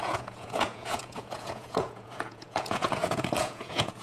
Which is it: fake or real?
fake